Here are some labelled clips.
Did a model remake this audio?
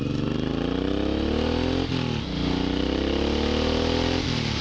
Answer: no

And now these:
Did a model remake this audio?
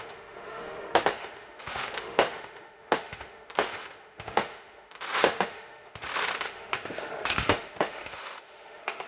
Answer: yes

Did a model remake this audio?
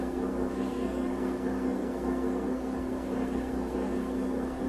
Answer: yes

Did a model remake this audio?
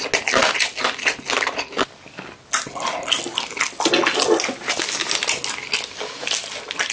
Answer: no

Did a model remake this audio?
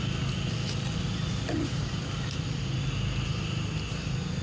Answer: no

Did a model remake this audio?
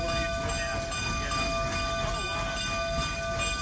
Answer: no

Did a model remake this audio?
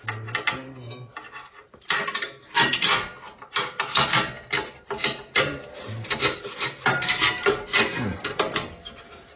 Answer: no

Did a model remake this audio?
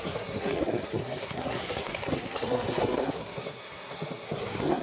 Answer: yes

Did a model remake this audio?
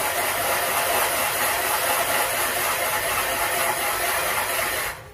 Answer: no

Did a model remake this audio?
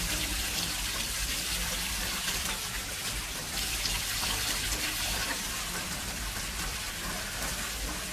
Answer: yes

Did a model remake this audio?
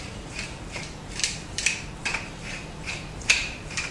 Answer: yes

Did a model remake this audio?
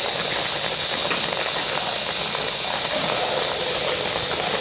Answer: no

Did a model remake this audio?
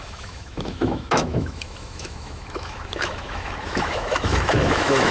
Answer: yes